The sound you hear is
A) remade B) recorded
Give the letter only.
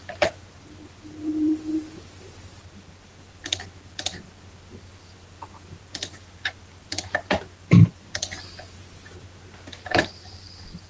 A